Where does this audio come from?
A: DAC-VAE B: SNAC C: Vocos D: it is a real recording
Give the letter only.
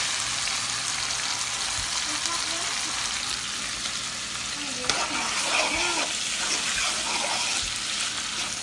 D